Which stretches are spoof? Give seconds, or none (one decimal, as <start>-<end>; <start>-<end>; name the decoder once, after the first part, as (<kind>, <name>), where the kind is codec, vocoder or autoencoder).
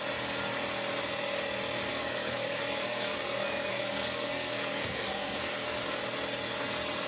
1.9-5.8 (codec, SNAC)